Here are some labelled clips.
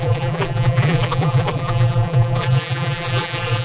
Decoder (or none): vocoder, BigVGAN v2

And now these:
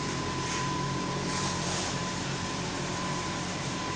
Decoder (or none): vocoder, BigVGAN v2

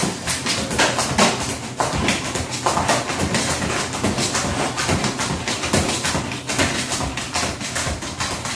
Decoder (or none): none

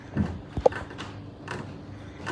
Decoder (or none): none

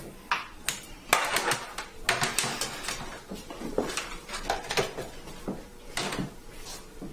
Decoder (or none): none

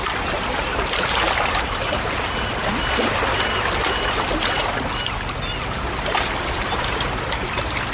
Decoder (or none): none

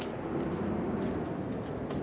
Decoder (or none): none